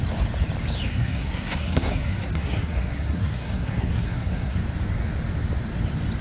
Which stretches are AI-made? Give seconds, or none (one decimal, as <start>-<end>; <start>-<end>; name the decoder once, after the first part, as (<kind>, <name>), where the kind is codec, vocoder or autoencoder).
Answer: 0.9-4.6 (codec, SNAC)